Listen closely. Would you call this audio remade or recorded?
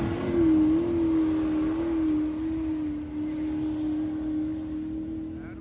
recorded